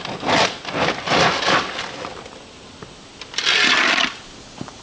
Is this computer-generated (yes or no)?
no